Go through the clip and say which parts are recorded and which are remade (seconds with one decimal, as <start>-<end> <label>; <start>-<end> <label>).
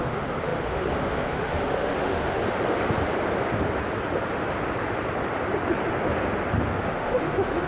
0.0-2.4 remade; 2.4-6.8 recorded; 6.8-7.7 remade